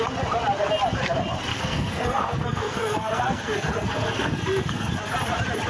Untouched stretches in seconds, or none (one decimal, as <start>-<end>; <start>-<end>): 0.0-1.5; 4.9-5.7